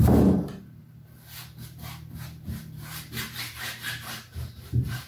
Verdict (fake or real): fake